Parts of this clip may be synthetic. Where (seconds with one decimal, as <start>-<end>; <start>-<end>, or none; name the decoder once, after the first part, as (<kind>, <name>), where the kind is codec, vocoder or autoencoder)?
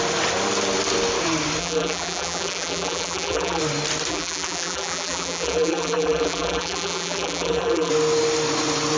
1.6-3.6 (vocoder, BigVGAN v2); 4.1-7.9